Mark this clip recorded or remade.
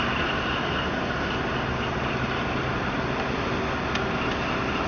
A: recorded